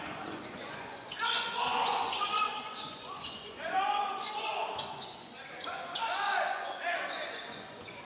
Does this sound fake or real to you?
fake